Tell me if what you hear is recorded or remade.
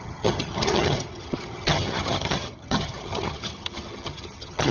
remade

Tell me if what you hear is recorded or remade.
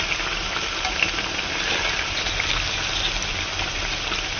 recorded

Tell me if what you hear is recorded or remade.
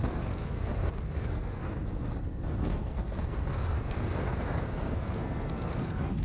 remade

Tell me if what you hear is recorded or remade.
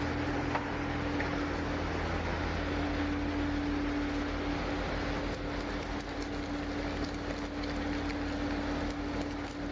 recorded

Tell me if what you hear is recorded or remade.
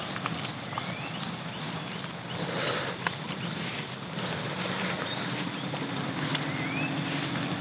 recorded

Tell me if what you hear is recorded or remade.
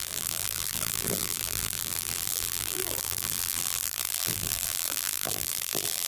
remade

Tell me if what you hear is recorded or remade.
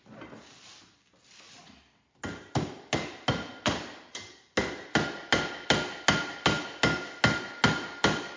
recorded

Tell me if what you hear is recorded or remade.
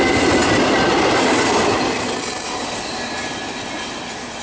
recorded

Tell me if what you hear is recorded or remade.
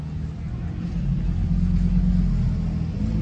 recorded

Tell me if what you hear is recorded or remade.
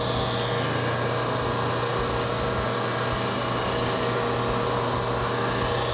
recorded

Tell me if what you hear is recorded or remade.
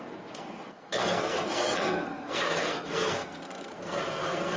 remade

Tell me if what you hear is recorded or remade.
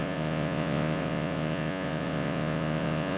remade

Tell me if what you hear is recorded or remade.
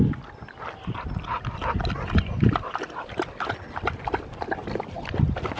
recorded